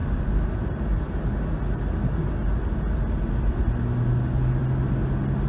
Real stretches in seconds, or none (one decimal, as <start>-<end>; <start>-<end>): 0.0-5.5